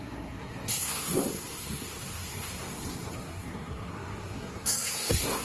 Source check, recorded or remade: remade